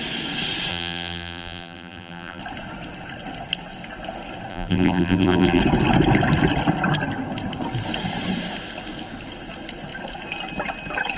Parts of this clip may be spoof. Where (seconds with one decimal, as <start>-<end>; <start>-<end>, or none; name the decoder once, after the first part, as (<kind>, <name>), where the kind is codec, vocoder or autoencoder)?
0.7-2.4 (vocoder, BigVGAN v2); 4.5-5.6